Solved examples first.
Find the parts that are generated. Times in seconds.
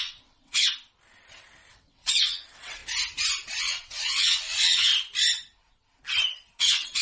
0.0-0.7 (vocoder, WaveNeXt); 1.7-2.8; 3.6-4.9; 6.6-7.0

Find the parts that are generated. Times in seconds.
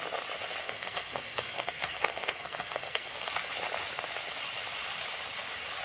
0.6-3.3 (codec, SNAC)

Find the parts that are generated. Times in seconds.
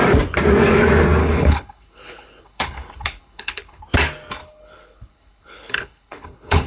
1.2-3.8 (codec, HILCodec); 4.4-6.7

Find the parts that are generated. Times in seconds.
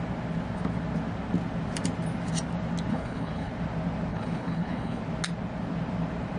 2.9-3.5 (codec, HILCodec); 4.1-5.0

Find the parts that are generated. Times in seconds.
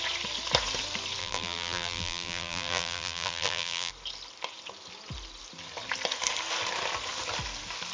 1.2-3.9 (vocoder, BigVGAN v2)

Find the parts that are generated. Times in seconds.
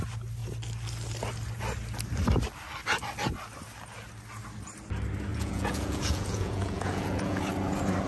5.3-7.4 (vocoder, Vocos)